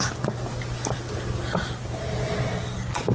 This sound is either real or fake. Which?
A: real